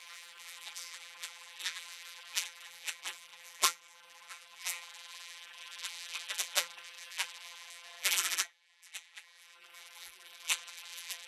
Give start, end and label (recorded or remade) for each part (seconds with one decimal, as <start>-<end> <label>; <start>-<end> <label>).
0.0-11.3 remade

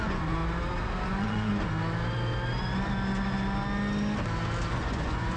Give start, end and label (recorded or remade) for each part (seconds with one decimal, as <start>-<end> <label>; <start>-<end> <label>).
0.0-0.4 remade; 0.4-1.1 recorded; 1.1-1.5 remade; 1.5-4.7 recorded; 4.7-5.4 remade

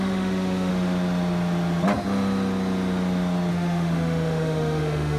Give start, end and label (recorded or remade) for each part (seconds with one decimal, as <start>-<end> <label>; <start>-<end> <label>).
0.0-0.7 remade; 0.7-3.5 recorded; 3.5-5.2 remade

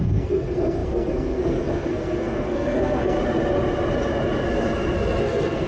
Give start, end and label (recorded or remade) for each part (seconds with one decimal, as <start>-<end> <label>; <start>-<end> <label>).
0.0-3.2 remade; 3.2-5.2 recorded; 5.2-5.7 remade